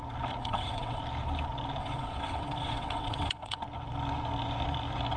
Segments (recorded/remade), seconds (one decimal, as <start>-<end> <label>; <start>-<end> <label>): 0.0-0.4 recorded; 0.4-1.0 remade; 1.0-1.8 recorded; 1.8-3.6 remade; 3.6-5.2 recorded